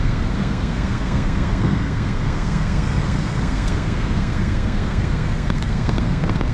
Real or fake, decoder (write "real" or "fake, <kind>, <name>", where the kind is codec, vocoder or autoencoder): fake, codec, SNAC